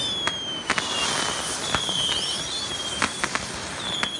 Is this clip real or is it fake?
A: real